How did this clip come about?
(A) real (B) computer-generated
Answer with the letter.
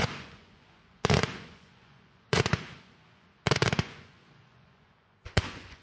B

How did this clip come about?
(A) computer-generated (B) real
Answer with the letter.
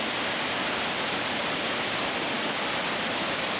B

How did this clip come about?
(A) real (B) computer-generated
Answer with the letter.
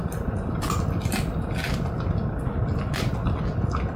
A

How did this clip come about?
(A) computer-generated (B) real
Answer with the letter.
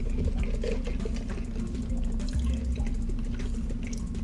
B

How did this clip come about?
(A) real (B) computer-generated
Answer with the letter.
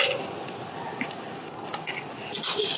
A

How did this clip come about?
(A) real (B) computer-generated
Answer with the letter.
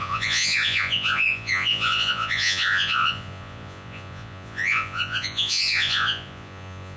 B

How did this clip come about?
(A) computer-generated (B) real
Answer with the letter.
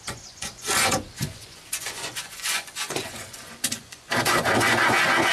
A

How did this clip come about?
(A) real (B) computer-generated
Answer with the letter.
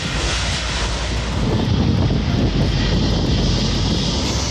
A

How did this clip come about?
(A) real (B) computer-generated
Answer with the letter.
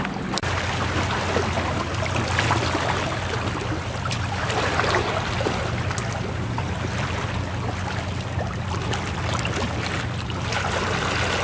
A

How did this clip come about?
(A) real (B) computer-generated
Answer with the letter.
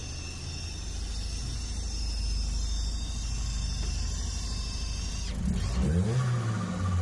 A